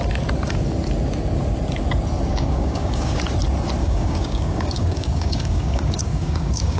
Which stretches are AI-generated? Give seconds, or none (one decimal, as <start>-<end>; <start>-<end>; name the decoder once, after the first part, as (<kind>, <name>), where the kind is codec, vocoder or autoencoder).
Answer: 2.3-3.3 (codec, DAC); 3.8-6.8